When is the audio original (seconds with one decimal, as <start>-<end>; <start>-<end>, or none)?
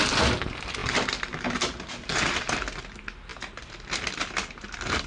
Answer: 0.0-5.1